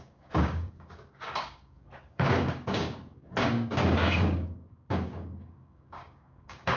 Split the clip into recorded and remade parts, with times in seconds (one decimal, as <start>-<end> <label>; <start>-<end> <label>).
0.0-6.8 remade